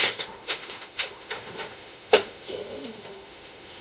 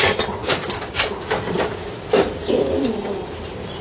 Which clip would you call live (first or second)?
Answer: second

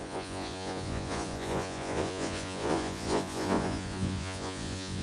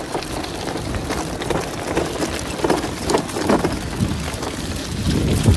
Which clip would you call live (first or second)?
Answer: second